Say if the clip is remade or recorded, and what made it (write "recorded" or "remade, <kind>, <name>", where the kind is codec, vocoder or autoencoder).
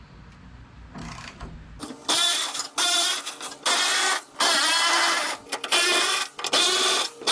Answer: recorded